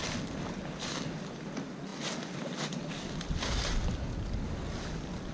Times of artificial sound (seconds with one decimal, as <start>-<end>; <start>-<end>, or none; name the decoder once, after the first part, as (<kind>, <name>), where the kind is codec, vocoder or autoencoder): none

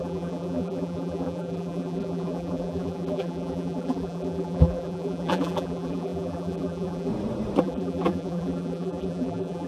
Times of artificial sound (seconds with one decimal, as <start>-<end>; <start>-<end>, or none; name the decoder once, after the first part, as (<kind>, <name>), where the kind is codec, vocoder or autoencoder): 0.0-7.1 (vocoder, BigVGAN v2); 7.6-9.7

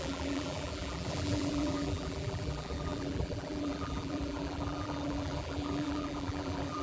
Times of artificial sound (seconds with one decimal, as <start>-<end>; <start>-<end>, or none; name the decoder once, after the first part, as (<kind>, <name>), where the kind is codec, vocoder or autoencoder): 0.0-6.8 (vocoder, BigVGAN v2)

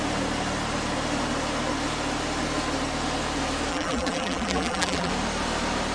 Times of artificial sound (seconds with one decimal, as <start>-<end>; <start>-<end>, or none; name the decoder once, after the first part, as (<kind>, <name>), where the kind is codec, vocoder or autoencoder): 3.7-5.1 (vocoder, BigVGAN v2)

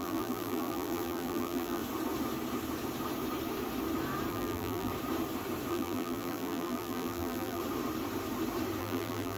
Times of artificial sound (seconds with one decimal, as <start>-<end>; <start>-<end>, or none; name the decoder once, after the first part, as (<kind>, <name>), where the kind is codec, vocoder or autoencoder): 0.0-1.8 (vocoder, BigVGAN v2); 4.3-4.9; 5.7-7.6; 8.8-9.4